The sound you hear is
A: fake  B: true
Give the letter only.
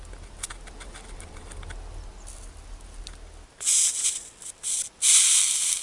B